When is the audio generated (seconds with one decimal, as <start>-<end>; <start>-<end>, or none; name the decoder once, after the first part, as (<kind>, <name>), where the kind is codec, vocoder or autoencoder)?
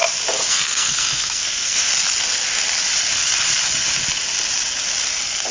0.5-1.9 (codec, SNAC)